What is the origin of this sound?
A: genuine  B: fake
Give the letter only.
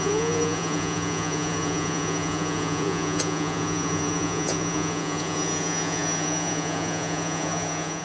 B